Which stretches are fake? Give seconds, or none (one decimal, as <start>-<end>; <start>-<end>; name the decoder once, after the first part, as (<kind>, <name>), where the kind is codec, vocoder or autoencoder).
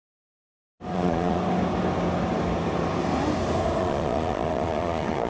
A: 0.9-1.4 (vocoder, Vocos); 3.8-5.3